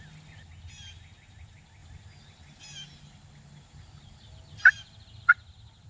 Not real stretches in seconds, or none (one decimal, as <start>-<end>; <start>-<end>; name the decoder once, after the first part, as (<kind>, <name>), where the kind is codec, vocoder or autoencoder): none